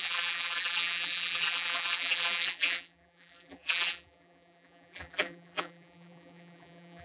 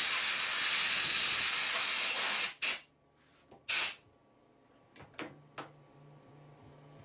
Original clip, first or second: second